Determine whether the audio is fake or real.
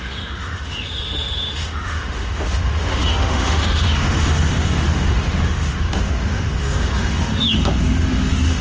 fake